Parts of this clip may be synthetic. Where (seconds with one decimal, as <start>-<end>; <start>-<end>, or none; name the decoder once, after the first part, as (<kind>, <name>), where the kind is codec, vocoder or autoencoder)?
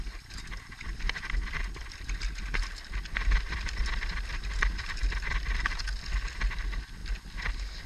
none